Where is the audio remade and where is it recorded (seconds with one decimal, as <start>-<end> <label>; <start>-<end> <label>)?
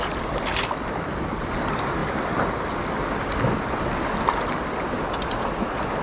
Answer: 0.0-6.0 recorded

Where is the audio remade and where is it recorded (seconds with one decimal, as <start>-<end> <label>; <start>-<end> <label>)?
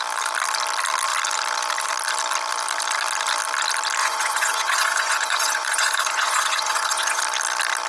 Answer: 0.0-4.0 recorded; 4.0-7.2 remade; 7.2-7.9 recorded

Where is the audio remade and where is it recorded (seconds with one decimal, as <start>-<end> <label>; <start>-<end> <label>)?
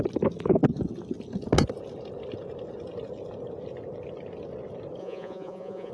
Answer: 0.0-5.0 recorded; 5.0-5.9 remade